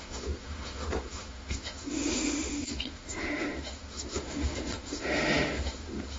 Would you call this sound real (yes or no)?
no